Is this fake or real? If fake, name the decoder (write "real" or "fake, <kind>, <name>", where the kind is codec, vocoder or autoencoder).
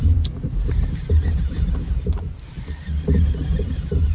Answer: real